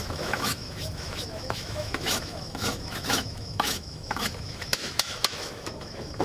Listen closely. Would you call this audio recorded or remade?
remade